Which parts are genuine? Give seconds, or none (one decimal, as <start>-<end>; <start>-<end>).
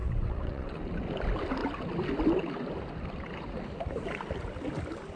0.8-5.2